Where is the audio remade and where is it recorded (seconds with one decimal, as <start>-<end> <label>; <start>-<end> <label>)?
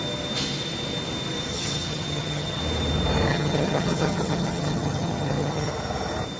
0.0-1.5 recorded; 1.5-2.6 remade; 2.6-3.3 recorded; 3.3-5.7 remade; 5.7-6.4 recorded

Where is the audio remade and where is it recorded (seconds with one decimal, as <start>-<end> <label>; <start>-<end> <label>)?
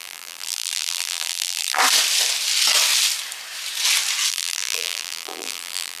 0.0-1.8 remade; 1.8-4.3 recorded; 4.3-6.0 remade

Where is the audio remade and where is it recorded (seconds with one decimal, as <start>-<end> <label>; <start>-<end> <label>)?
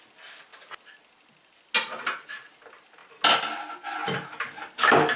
0.0-5.2 recorded